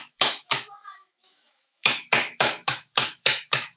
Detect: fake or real fake